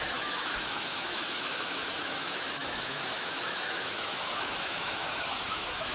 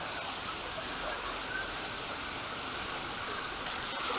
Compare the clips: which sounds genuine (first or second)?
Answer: second